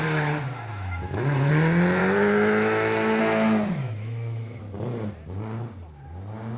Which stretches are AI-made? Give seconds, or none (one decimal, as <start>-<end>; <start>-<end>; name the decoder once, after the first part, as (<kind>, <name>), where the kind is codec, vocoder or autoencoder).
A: 0.7-1.5 (autoencoder, DAC-VAE); 2.0-3.2; 3.8-4.6